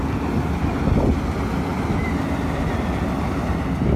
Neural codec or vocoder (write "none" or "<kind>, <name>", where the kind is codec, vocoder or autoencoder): none